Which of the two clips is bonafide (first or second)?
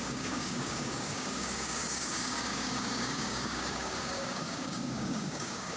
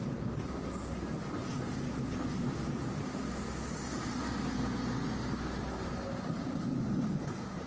second